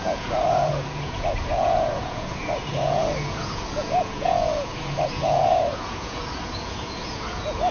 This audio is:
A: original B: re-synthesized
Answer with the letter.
B